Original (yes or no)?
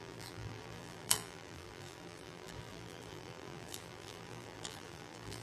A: no